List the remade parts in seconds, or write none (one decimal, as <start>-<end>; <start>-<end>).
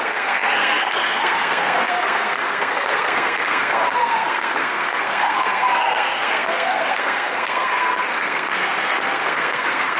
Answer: 0.0-10.0